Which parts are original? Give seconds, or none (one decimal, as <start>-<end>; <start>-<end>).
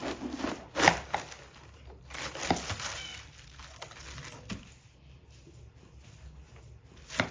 0.0-7.3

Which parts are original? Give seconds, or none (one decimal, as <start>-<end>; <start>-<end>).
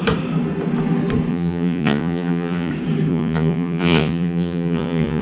0.0-1.3; 2.7-3.1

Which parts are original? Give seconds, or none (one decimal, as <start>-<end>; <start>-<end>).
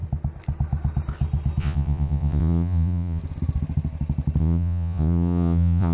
0.0-1.6; 3.2-4.4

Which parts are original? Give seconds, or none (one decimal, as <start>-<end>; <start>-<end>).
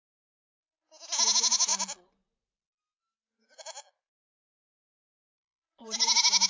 0.0-6.5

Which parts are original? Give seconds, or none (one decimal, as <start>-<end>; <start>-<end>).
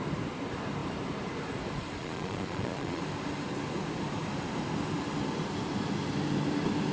0.0-2.0; 3.0-6.9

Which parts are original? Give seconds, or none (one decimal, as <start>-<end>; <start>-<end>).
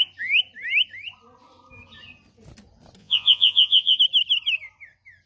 0.0-3.0; 4.0-5.3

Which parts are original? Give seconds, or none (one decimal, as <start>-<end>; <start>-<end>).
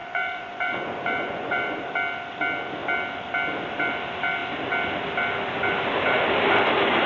1.8-7.1